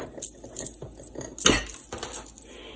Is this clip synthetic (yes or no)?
no